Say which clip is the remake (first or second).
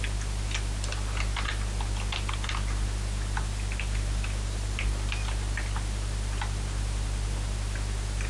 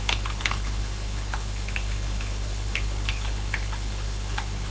second